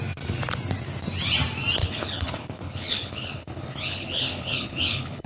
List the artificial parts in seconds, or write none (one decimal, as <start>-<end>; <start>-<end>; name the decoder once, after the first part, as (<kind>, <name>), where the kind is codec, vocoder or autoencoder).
1.8-5.3 (codec, HILCodec)